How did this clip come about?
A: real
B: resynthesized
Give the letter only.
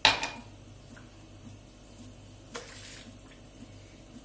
A